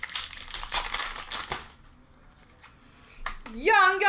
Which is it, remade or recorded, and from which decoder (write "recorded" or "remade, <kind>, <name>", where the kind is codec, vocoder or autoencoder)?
recorded